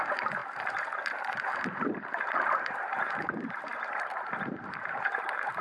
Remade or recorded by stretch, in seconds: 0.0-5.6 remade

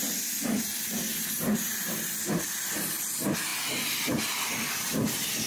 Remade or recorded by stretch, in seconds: 0.0-5.5 recorded

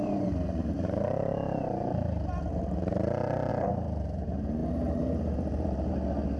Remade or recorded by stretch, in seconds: 0.0-3.5 remade; 3.5-4.6 recorded; 4.6-5.9 remade; 5.9-6.4 recorded